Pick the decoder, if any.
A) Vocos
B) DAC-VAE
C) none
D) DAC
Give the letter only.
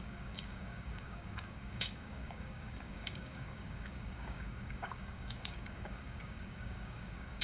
D